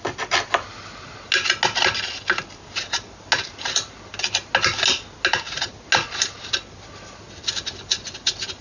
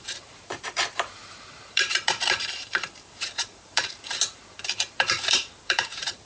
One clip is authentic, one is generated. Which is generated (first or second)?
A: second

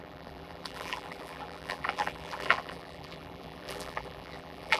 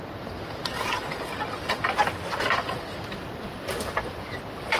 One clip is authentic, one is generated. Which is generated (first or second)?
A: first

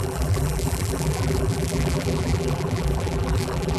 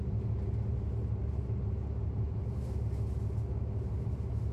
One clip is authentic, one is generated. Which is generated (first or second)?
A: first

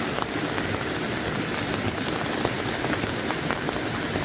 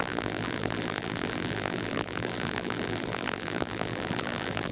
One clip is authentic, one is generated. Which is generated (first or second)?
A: second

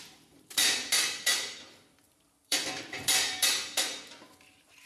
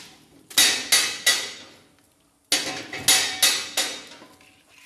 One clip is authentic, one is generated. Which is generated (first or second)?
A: first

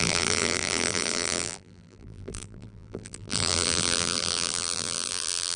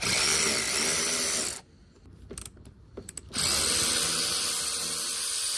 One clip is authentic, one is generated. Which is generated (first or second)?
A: first